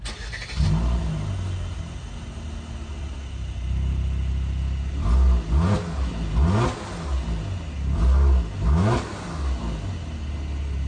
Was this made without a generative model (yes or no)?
yes